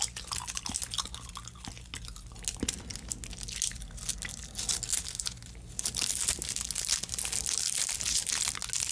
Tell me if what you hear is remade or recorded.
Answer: recorded